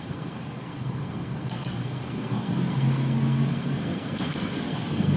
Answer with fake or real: fake